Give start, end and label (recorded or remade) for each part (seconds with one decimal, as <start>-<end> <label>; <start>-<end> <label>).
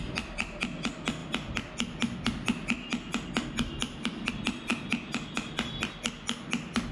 0.0-6.9 recorded